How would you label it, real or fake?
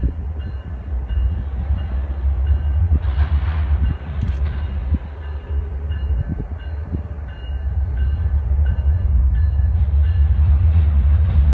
fake